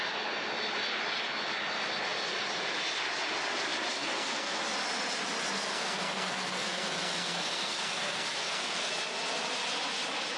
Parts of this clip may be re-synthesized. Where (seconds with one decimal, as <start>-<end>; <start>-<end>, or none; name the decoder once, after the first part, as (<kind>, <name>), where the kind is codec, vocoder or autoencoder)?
4.0-4.6 (codec, SNAC); 5.7-8.9